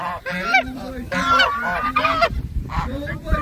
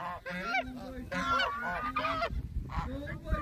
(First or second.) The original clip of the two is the second